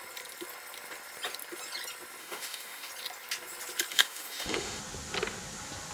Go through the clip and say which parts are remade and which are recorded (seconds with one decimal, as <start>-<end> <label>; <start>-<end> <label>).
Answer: 0.0-2.2 recorded; 2.2-2.9 remade; 2.9-3.9 recorded; 3.9-4.8 remade; 4.8-5.9 recorded